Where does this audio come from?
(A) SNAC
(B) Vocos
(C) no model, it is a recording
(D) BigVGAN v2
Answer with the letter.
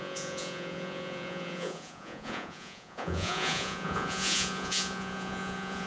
B